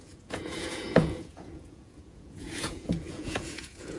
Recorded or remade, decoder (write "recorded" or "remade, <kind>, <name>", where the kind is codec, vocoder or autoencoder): remade, vocoder, Vocos